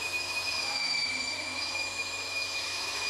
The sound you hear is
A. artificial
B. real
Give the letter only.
A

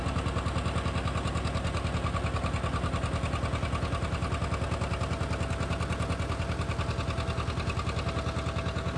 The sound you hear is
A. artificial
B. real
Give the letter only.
B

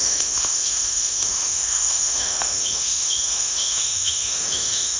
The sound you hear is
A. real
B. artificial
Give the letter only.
B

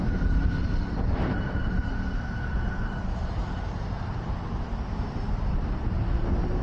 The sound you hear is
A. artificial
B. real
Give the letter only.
B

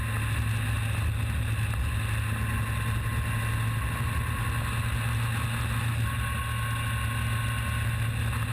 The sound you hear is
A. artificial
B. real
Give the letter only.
B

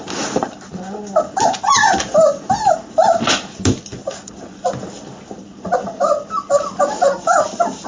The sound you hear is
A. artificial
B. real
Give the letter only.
B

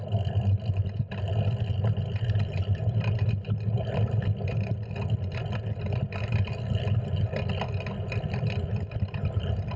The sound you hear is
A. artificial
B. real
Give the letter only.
B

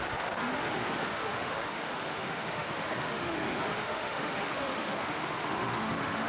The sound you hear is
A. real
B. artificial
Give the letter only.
B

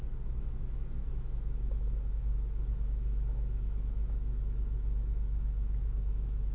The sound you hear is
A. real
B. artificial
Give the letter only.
B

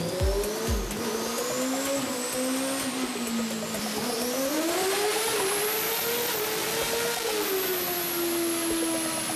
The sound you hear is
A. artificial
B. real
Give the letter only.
B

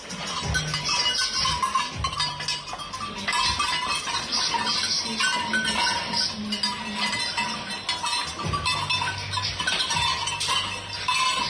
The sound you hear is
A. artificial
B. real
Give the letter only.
B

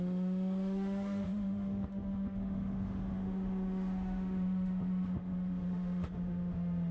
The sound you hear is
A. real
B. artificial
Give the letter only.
B